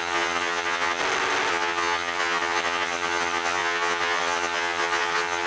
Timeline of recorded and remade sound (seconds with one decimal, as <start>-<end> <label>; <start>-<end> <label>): 0.0-1.0 remade; 1.0-1.5 recorded; 1.5-5.5 remade